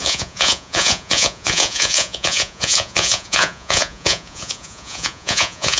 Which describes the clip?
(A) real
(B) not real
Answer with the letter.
B